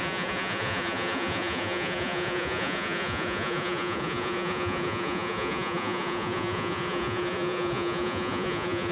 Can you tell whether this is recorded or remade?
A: remade